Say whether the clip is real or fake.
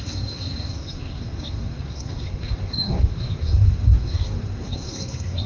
fake